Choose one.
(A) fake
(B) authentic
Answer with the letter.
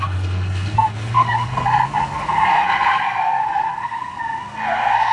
A